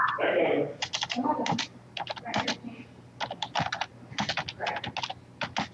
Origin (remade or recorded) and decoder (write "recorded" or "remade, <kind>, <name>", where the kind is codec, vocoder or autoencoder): recorded